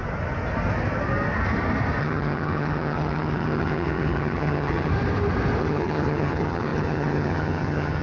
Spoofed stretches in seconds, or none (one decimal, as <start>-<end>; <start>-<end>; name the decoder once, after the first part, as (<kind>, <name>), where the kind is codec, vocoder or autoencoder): 2.0-4.9 (vocoder, HiFi-GAN); 5.6-8.0